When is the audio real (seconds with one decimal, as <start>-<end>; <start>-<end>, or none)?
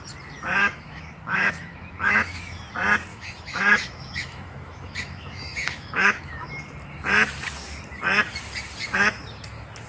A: 0.0-0.6; 2.6-3.1; 6.5-9.9